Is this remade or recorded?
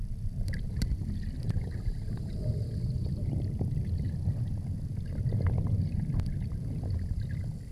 recorded